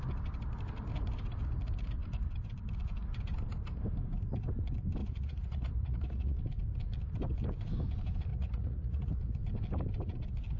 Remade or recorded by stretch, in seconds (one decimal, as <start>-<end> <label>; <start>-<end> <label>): 0.0-5.0 recorded; 5.0-6.4 remade; 6.4-8.3 recorded; 8.3-9.4 remade; 9.4-10.6 recorded